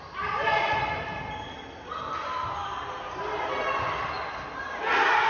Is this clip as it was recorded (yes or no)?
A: yes